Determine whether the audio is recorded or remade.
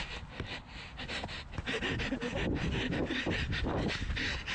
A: recorded